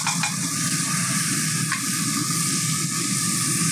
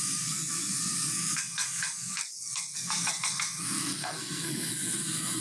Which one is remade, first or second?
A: second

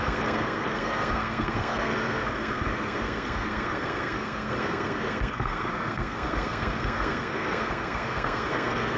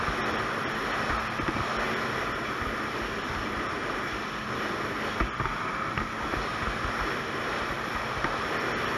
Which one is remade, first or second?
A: first